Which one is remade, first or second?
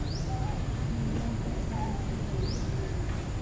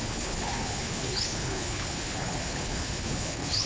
second